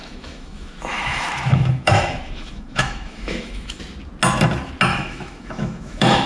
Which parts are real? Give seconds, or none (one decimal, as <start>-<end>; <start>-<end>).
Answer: 3.8-4.9